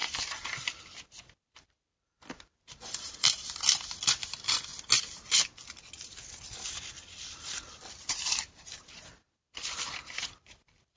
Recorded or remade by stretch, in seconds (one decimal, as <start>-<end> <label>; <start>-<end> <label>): 0.0-4.7 remade; 4.7-6.7 recorded; 6.7-11.0 remade